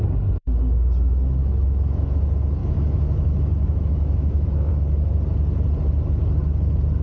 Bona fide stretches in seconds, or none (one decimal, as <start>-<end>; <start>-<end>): 0.0-1.4; 2.2-2.6; 4.7-7.0